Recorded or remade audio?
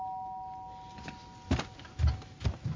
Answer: recorded